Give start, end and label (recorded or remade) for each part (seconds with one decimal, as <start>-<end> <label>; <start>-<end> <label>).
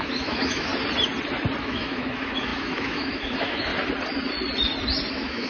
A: 0.0-0.7 remade; 0.7-1.6 recorded; 1.6-3.7 remade; 3.7-5.1 recorded; 5.1-5.5 remade